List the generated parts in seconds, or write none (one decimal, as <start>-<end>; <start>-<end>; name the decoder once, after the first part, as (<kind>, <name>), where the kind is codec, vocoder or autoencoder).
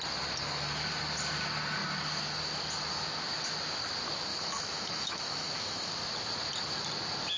4.3-5.9 (autoencoder, DAC-VAE)